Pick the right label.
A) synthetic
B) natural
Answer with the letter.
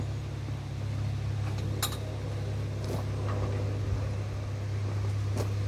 B